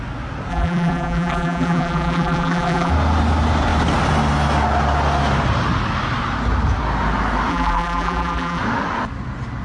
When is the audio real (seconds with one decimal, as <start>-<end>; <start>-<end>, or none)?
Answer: 0.0-0.5; 2.9-7.5; 8.6-9.6